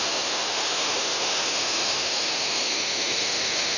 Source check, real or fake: fake